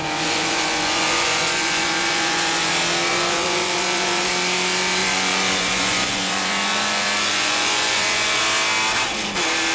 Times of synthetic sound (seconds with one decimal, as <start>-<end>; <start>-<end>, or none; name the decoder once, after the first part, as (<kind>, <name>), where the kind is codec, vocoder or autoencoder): 0.0-2.7 (vocoder, Vocos); 3.1-4.3; 5.0-8.4